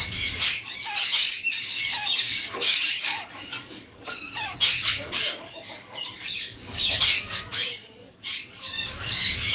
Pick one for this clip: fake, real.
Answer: fake